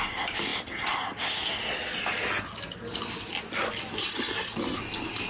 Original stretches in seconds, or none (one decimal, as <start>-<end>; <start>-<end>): 0.0-5.3